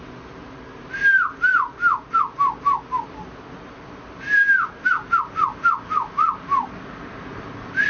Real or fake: real